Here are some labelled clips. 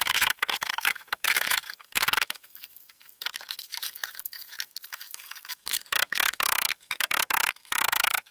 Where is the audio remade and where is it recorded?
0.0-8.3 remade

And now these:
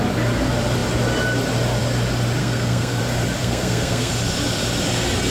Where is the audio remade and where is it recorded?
0.0-2.4 recorded; 2.4-3.0 remade; 3.0-3.4 recorded; 3.4-4.1 remade; 4.1-5.3 recorded

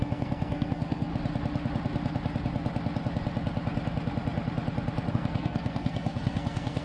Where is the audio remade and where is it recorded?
0.0-1.1 remade; 1.1-5.1 recorded; 5.1-6.8 remade

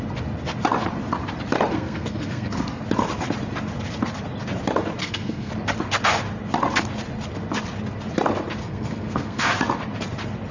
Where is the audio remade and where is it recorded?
0.0-1.7 recorded; 1.7-2.8 remade; 2.8-5.0 recorded; 5.0-5.5 remade; 5.5-8.6 recorded; 8.6-9.5 remade; 9.5-10.5 recorded

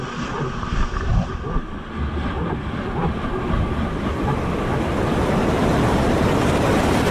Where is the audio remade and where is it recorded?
0.0-7.1 recorded

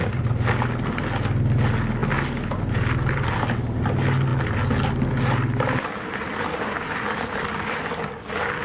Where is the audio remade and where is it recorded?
0.0-8.6 recorded